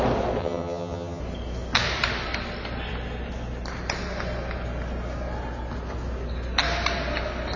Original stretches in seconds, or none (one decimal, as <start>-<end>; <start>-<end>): 0.0-0.4; 1.2-7.6